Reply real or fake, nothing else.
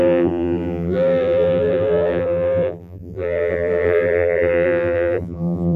fake